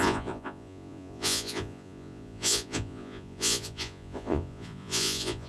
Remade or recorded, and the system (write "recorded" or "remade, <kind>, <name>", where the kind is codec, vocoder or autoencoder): remade, vocoder, Vocos